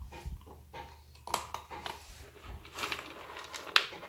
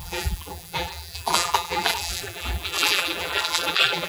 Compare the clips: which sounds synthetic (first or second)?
second